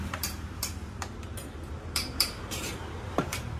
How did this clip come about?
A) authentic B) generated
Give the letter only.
B